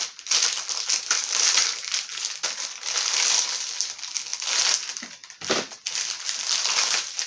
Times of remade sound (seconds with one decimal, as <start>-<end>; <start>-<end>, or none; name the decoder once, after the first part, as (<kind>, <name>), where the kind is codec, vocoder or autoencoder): none